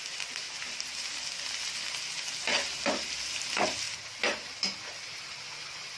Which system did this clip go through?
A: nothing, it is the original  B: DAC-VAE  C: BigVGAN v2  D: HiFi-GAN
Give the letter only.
A